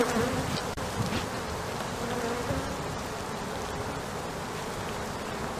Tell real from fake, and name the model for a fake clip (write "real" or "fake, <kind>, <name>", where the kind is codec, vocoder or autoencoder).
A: real